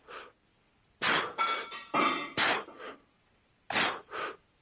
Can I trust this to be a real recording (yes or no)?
yes